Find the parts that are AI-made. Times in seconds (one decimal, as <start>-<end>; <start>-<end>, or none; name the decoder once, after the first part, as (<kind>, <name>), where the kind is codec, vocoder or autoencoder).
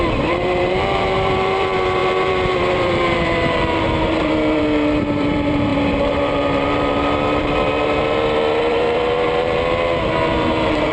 0.0-10.9 (vocoder, BigVGAN v2)